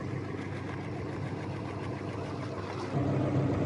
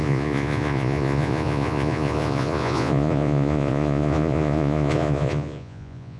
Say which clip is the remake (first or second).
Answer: second